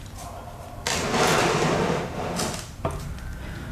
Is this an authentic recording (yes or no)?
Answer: yes